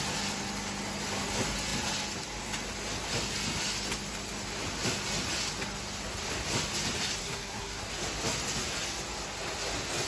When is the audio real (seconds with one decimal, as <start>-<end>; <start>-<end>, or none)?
0.0-7.2; 7.8-10.1